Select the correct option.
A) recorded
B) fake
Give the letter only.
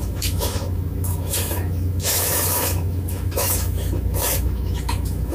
B